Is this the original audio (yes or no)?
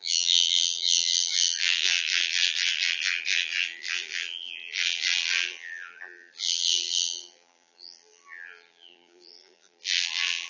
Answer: no